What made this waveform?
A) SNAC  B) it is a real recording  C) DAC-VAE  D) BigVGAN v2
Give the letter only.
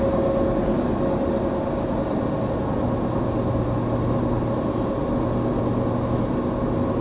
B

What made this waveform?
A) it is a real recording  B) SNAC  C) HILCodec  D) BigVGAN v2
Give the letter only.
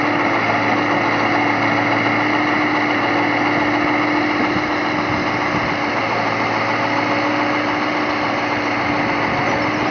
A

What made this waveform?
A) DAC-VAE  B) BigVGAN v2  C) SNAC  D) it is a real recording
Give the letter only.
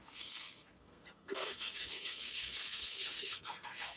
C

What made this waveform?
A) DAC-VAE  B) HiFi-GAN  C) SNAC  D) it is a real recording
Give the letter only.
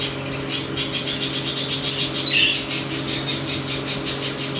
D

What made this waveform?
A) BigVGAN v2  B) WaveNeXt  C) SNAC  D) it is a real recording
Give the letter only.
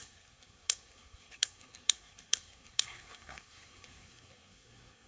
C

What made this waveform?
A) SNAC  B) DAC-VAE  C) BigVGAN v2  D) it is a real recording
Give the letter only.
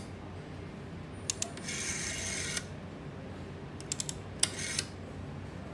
D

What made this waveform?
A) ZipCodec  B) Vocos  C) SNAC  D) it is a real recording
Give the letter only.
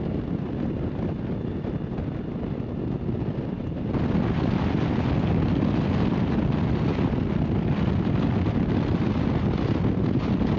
D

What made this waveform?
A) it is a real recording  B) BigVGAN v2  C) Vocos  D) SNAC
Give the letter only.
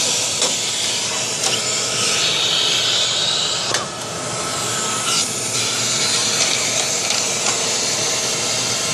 A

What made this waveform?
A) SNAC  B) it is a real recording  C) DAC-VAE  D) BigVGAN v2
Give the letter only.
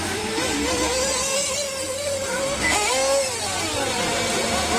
B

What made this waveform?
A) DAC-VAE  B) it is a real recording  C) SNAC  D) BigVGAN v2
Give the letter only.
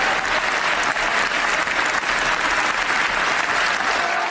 B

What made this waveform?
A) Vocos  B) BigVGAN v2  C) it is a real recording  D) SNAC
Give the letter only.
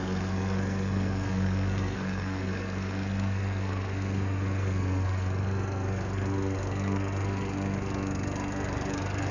D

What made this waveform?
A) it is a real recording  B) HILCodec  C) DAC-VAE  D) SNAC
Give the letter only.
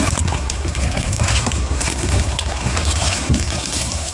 D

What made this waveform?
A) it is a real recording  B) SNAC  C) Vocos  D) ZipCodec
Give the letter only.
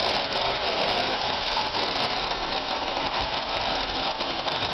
B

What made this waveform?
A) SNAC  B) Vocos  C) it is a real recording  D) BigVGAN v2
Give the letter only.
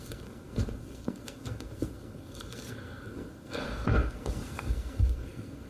A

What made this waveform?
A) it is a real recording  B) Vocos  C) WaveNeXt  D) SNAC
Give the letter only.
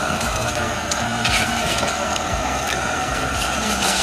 D